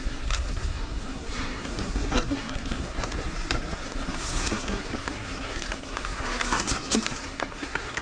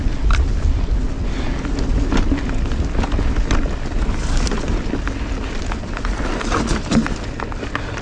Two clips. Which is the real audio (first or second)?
second